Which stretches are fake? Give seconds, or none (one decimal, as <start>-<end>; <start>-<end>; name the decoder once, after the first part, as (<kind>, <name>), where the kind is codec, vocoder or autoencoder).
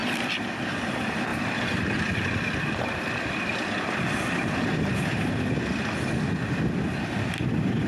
0.0-0.6 (vocoder, BigVGAN v2); 1.3-5.3